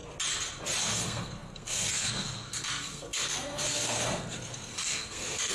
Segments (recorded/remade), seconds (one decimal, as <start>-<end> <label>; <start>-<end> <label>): 0.0-0.8 recorded; 0.8-5.5 remade